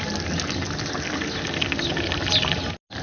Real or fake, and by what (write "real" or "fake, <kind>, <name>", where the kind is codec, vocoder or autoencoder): real